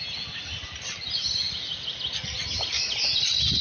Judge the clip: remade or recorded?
recorded